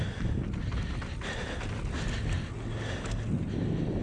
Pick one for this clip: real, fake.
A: real